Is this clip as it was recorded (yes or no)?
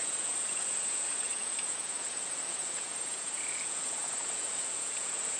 no